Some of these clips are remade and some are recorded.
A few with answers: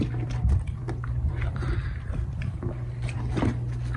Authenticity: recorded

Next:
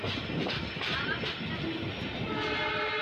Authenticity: recorded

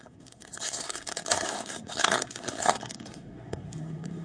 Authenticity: remade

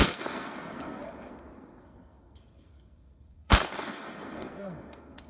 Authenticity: remade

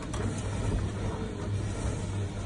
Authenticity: recorded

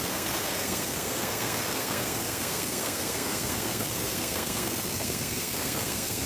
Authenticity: remade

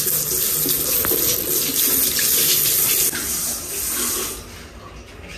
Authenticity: recorded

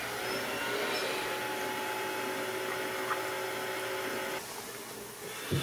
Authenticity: recorded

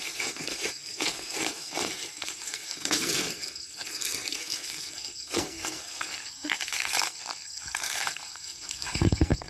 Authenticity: remade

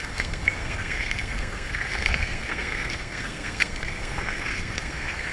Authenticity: remade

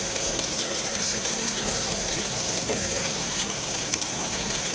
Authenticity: remade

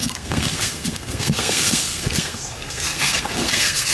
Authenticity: remade